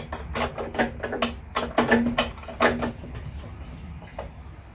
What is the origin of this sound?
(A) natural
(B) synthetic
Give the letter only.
A